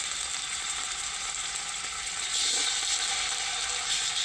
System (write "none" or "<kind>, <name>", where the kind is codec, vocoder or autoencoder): none